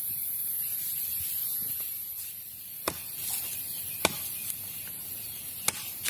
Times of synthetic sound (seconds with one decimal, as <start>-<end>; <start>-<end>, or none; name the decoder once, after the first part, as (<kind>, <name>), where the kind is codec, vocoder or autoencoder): 1.4-2.3 (vocoder, Vocos)